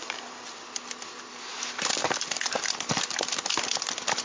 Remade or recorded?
recorded